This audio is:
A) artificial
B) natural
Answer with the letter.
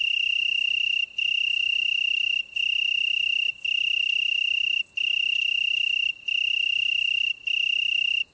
B